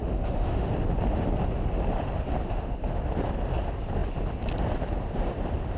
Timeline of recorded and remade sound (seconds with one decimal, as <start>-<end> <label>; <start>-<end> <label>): 0.0-0.7 remade; 0.7-2.4 recorded; 2.4-3.0 remade; 3.0-5.8 recorded